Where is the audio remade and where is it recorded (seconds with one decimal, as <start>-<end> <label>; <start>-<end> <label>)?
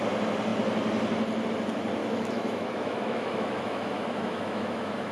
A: 0.0-2.0 recorded; 2.0-5.1 remade